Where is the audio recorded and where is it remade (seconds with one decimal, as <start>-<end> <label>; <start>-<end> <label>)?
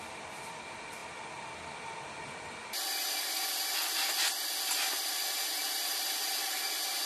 0.0-5.6 recorded; 5.6-6.3 remade; 6.3-7.1 recorded